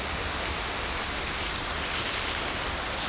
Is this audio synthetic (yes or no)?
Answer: no